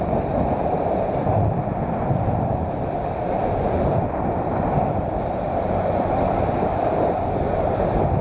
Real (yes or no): no